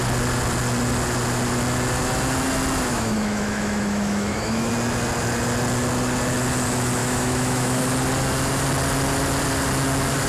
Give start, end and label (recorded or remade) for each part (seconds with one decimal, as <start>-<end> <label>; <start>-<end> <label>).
0.0-2.9 recorded; 2.9-4.7 remade; 4.7-7.0 recorded; 7.0-7.8 remade; 7.8-10.3 recorded